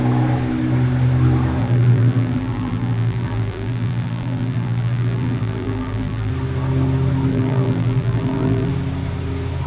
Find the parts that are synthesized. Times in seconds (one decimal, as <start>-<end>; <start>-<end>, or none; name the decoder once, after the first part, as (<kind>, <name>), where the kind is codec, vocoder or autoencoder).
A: 1.6-6.3 (vocoder, BigVGAN v2); 7.3-8.7